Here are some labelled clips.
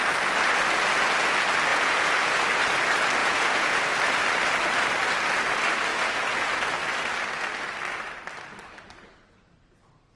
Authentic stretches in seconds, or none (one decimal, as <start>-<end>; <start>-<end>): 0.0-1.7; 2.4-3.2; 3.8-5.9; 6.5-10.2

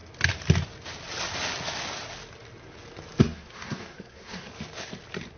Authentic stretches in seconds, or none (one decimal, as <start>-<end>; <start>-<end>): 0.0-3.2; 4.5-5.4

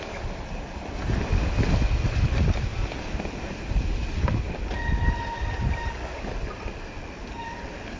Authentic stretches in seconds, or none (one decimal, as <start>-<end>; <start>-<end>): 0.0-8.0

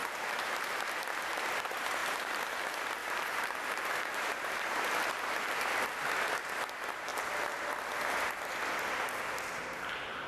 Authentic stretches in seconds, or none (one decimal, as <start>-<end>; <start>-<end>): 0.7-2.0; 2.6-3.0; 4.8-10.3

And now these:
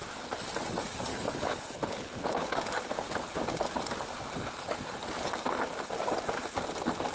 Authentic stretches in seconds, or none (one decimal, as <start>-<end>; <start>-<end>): 0.0-1.1; 2.5-7.1

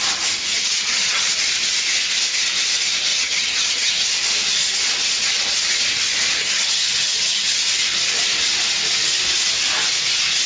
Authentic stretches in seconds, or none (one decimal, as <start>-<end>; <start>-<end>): 0.0-0.5; 1.3-3.1; 3.9-6.4; 7.7-10.5